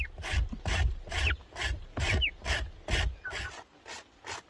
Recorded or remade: recorded